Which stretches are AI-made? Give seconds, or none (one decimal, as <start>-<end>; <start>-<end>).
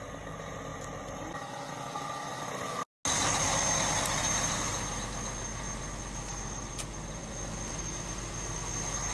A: none